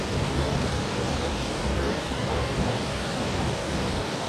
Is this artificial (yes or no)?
yes